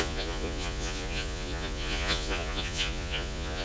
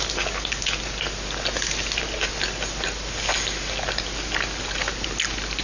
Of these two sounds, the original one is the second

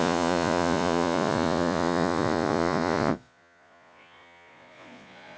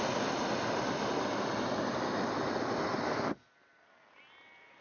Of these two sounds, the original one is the second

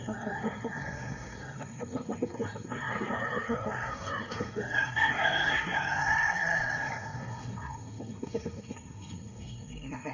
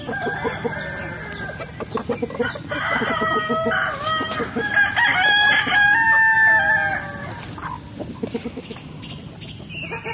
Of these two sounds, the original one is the second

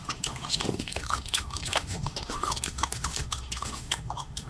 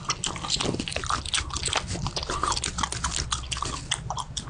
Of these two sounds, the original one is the second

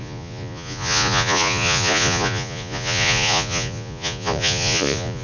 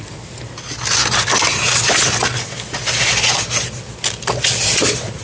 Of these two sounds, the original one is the second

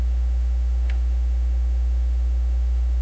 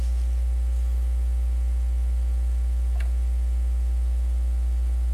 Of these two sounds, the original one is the second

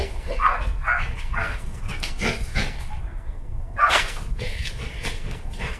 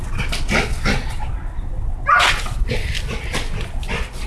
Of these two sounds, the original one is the second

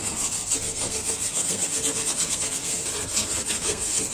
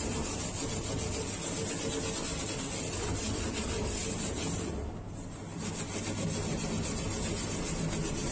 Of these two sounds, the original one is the second